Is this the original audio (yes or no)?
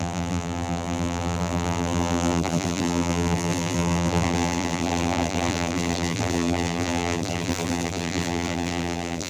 no